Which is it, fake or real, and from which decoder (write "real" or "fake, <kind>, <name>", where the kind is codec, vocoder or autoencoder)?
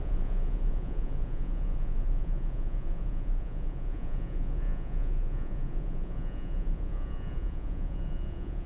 fake, vocoder, Vocos